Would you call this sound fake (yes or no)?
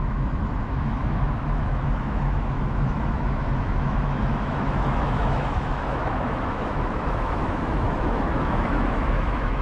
yes